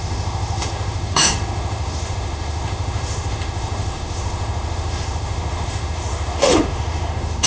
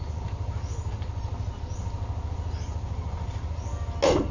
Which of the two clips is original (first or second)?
second